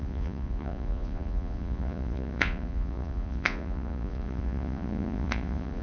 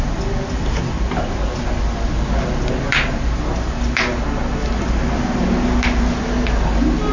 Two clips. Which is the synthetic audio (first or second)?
first